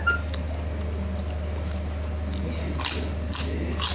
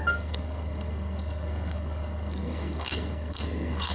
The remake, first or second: second